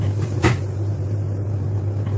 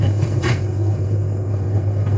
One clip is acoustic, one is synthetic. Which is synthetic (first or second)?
second